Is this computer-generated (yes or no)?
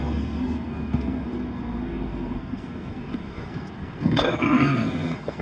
yes